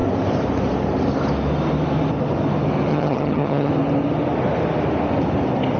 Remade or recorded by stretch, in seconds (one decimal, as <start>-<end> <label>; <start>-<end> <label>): 0.0-2.9 recorded; 2.9-3.7 remade; 3.7-5.8 recorded